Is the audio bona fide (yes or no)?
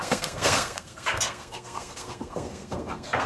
no